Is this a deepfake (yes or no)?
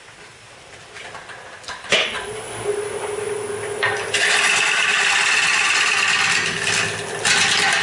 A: no